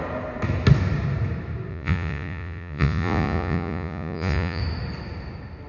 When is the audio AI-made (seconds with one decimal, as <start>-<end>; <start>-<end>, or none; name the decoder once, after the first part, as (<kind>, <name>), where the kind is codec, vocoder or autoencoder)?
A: 1.7-4.6 (vocoder, Vocos)